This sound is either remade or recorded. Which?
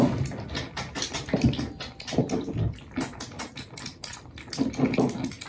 recorded